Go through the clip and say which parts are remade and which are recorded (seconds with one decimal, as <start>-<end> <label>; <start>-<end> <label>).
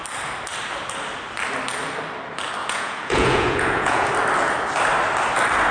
0.0-2.6 recorded; 2.6-4.1 remade; 4.1-5.7 recorded